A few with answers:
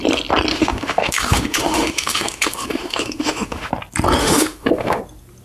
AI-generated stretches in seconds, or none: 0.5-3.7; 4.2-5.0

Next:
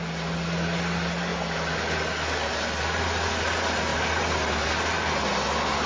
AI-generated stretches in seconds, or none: none

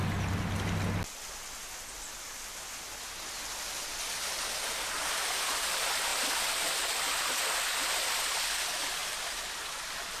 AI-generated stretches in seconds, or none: none

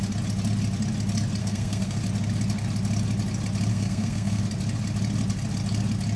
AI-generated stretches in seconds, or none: 1.4-2.0; 3.7-4.4

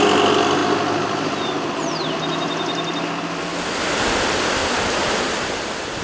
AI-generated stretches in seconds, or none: 4.6-6.0

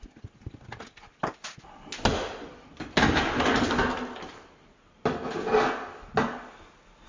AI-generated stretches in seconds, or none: none

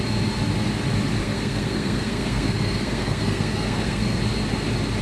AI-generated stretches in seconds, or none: 1.2-4.2